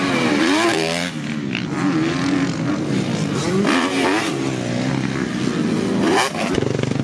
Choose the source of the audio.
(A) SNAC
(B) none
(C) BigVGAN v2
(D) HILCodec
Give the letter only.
B